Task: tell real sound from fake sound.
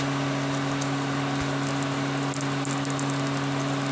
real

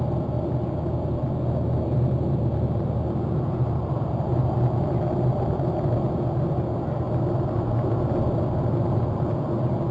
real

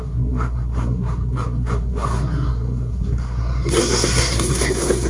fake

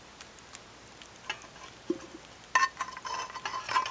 real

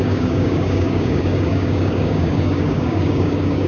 fake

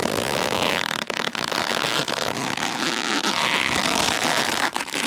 fake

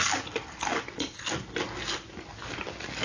real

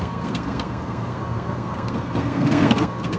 fake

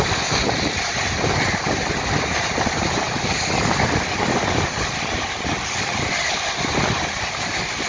real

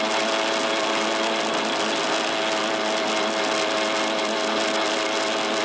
real